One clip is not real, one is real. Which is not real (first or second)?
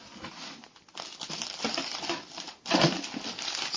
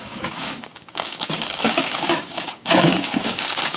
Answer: second